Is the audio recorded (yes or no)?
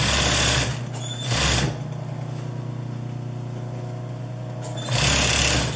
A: yes